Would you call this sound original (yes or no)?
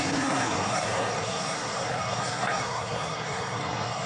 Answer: no